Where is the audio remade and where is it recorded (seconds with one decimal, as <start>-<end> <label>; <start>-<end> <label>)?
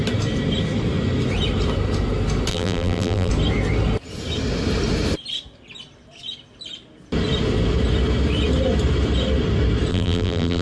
0.0-2.5 recorded; 2.5-3.3 remade; 3.3-9.9 recorded; 9.9-10.6 remade